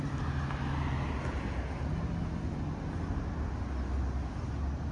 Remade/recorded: recorded